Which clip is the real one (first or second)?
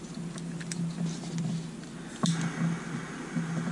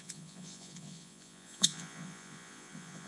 first